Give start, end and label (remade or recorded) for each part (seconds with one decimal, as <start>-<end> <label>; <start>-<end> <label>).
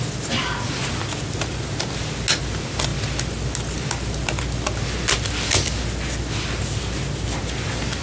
0.0-8.0 recorded